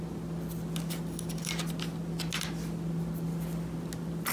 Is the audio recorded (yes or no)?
yes